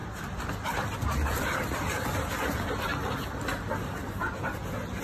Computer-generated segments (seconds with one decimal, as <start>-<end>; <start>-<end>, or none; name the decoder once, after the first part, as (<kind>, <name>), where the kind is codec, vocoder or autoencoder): 0.0-0.8 (vocoder, BigVGAN v2)

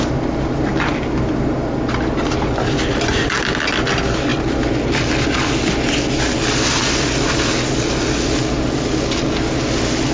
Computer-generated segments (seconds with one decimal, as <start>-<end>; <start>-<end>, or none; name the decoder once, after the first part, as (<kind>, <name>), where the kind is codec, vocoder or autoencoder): none

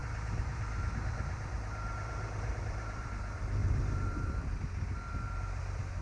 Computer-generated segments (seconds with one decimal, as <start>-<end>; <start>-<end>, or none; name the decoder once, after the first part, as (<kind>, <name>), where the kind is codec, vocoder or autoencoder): 0.0-3.1 (vocoder, BigVGAN v2); 3.6-4.3

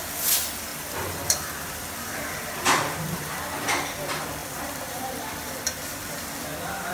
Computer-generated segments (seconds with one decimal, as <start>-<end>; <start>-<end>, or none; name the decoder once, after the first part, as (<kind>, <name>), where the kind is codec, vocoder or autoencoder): 0.7-3.2 (vocoder, BigVGAN v2); 4.4-6.9

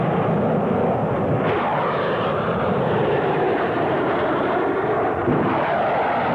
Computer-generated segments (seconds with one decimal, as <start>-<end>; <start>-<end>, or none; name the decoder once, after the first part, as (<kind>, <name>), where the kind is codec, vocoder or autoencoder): 1.7-4.6 (vocoder, BigVGAN v2); 5.2-5.8

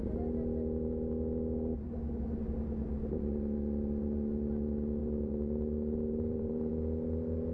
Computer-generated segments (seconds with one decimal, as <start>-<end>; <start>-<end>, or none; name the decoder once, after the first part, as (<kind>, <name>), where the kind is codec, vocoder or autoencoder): 5.0-6.7 (vocoder, BigVGAN v2)

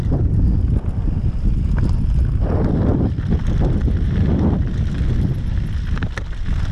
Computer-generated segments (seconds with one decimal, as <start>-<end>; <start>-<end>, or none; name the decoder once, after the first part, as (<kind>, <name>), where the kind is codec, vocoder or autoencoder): 2.9-5.3 (vocoder, BigVGAN v2)

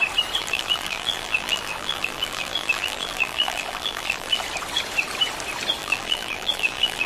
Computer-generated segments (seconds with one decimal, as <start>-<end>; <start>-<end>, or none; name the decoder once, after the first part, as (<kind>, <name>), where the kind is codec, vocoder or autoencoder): 0.4-4.4 (vocoder, BigVGAN v2); 5.8-7.1